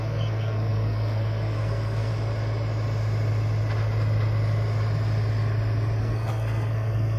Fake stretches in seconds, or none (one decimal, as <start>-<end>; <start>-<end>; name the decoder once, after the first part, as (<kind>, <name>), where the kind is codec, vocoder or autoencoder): 0.0-2.1 (codec, SNAC); 6.0-7.2